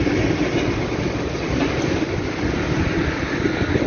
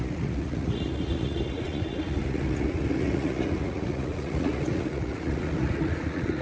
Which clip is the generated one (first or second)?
second